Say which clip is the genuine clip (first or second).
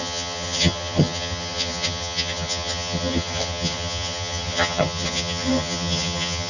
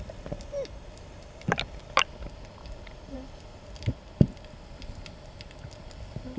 second